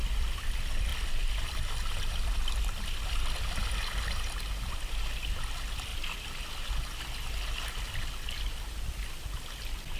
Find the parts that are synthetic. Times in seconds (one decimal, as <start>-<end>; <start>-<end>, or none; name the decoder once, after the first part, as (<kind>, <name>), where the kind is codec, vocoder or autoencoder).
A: none